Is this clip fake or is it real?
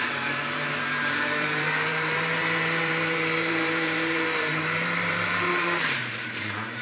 fake